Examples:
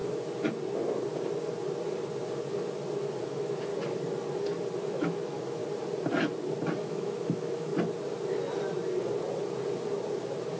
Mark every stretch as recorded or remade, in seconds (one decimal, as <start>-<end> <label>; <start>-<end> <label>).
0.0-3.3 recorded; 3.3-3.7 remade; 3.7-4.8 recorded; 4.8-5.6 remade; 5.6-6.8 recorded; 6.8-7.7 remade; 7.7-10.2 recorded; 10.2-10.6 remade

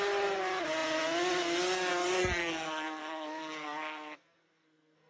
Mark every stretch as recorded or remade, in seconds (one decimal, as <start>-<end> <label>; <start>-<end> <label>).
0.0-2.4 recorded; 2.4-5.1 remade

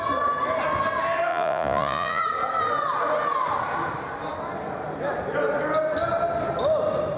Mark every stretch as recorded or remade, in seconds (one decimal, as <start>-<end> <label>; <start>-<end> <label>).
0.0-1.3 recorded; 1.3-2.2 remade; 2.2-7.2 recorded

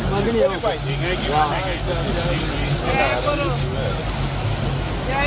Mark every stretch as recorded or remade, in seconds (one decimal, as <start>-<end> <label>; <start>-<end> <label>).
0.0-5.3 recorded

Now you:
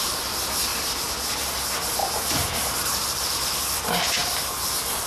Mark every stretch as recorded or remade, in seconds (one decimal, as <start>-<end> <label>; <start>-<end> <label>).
0.0-0.7 recorded; 0.7-1.3 remade; 1.3-2.0 recorded; 2.0-3.3 remade; 3.3-5.1 recorded